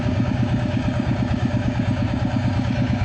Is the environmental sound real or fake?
fake